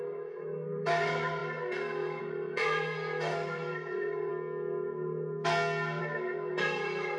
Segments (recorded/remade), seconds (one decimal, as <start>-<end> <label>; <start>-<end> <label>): 0.0-4.3 remade; 4.3-6.0 recorded; 6.0-7.2 remade